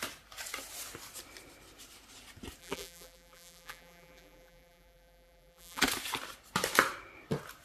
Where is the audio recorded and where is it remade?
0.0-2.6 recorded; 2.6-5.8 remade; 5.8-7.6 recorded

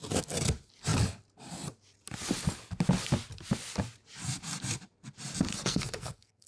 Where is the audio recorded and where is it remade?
0.0-5.5 recorded; 5.5-6.5 remade

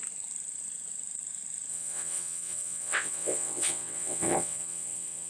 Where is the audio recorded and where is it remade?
0.0-1.7 recorded; 1.7-5.3 remade

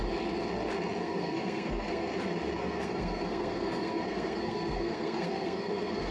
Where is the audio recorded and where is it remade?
0.0-1.0 recorded; 1.0-2.1 remade; 2.1-2.6 recorded; 2.6-6.1 remade

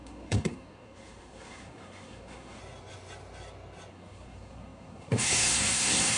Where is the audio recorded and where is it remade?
0.0-2.6 remade; 2.6-3.9 recorded; 3.9-6.2 remade

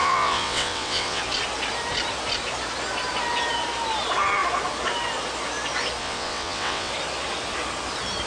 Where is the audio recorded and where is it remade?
0.0-1.2 remade; 1.2-6.0 recorded; 6.0-6.9 remade; 6.9-8.3 recorded

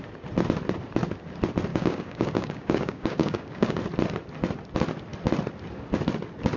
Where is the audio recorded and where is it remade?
0.0-1.7 recorded; 1.7-3.8 remade; 3.8-6.6 recorded

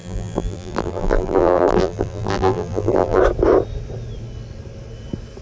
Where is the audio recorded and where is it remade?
0.0-3.2 remade; 3.2-5.4 recorded